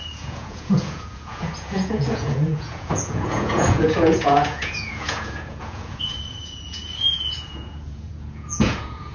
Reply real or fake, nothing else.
fake